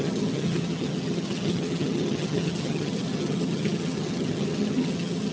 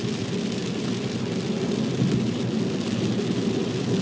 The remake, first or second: first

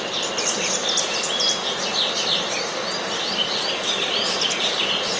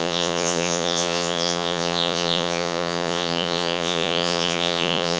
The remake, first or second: second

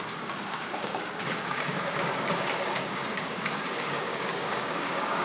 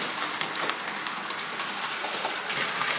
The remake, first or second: first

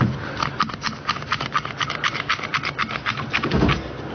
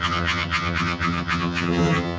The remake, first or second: second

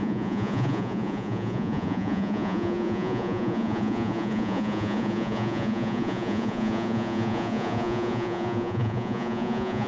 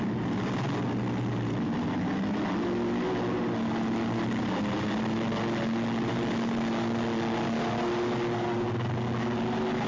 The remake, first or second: first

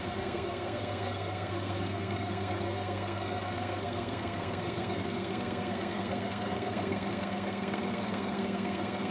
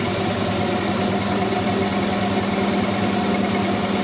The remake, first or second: first